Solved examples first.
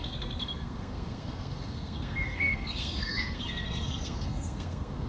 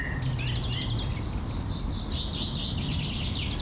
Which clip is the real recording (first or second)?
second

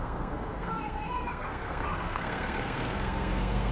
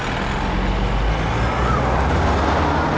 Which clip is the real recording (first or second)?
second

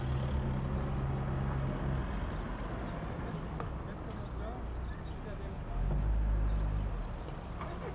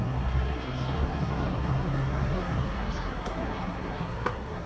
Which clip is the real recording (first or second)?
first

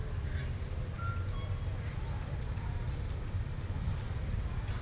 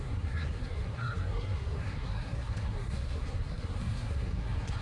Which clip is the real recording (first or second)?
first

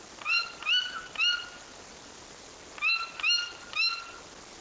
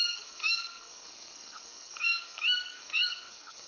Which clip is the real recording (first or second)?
first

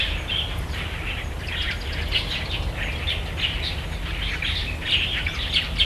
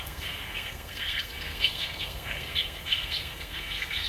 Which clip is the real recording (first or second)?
first